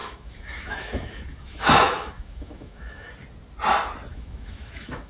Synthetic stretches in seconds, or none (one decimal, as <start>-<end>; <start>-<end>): 0.0-3.1; 4.1-5.1